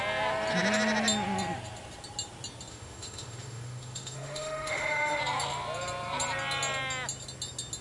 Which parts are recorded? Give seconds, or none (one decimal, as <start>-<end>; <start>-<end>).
0.0-2.7; 5.2-7.8